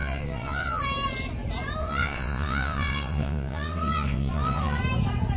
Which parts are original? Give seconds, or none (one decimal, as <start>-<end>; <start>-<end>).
0.8-1.8; 4.8-5.4